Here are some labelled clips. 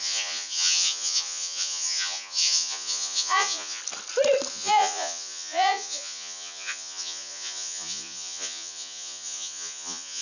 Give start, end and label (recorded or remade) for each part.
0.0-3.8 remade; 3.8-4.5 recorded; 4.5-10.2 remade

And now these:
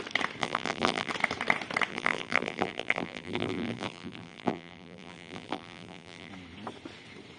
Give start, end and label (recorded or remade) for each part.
0.0-0.4 recorded; 0.4-1.1 remade; 1.1-1.9 recorded; 1.9-6.3 remade; 6.3-7.4 recorded